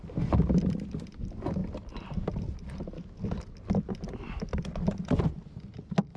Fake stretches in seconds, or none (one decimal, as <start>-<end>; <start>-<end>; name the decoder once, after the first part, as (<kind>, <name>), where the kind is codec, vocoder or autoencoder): none